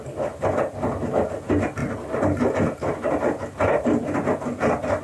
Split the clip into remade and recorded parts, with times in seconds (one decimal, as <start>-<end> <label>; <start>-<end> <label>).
0.0-5.0 recorded